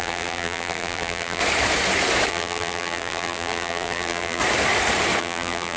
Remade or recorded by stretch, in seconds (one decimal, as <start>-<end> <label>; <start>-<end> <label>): 0.0-1.4 remade; 1.4-2.3 recorded; 2.3-4.4 remade; 4.4-5.2 recorded; 5.2-5.8 remade